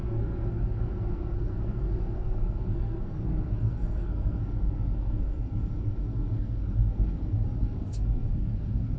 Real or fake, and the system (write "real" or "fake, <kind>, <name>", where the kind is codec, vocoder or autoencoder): fake, codec, SNAC